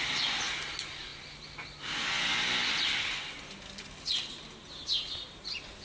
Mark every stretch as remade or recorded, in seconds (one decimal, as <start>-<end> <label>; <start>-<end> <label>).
0.0-5.8 recorded